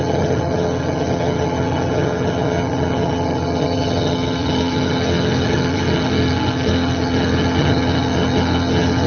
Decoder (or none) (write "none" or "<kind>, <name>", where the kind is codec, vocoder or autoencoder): vocoder, HiFi-GAN